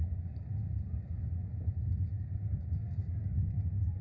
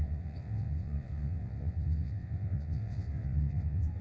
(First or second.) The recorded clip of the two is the first